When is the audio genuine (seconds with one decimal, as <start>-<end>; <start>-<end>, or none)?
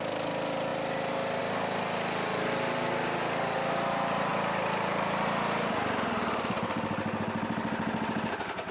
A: 0.0-8.7